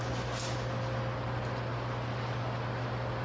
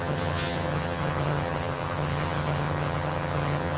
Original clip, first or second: first